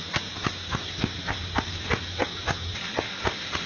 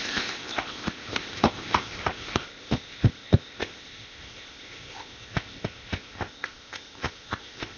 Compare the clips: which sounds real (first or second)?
first